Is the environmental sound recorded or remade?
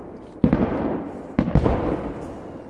recorded